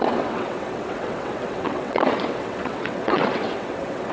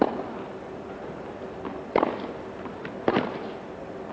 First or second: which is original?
second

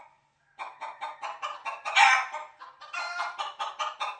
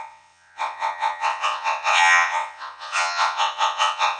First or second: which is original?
first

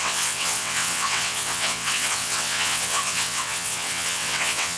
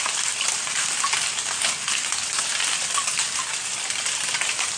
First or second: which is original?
second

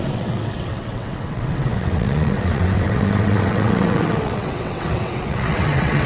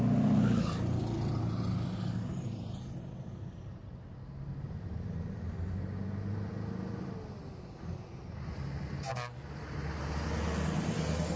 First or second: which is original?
second